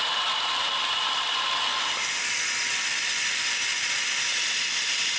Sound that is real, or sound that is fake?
real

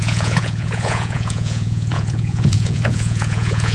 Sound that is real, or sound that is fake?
fake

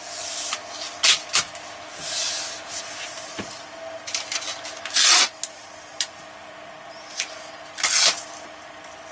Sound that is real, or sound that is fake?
real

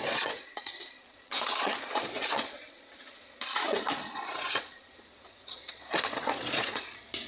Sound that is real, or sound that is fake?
fake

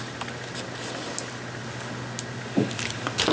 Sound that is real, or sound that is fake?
real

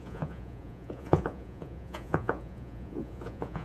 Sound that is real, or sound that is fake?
fake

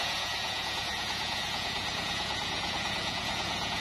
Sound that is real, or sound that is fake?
fake